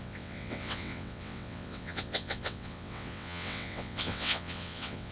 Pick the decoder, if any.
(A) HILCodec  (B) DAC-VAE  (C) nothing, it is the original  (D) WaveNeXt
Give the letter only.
D